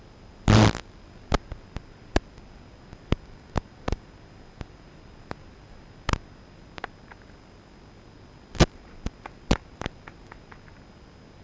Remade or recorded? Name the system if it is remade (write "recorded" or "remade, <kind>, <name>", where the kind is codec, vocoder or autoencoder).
recorded